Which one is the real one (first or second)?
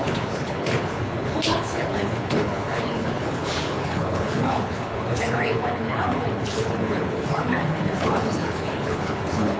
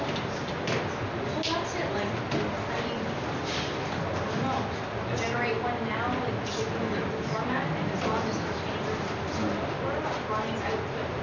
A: second